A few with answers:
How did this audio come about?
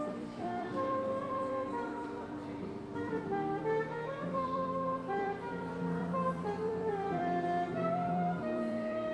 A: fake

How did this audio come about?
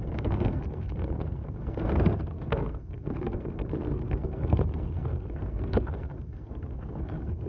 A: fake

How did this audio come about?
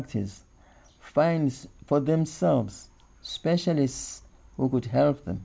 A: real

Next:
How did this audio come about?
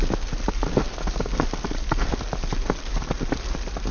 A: real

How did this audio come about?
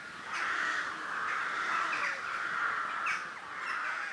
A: real